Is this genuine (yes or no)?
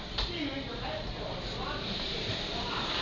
yes